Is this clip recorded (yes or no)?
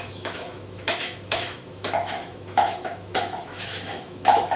no